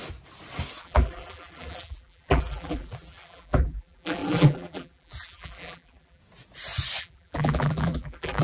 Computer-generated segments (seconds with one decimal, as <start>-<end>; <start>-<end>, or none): 0.8-6.2; 7.0-8.4